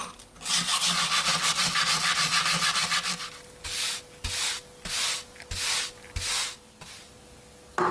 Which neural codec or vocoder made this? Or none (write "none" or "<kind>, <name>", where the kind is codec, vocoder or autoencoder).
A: none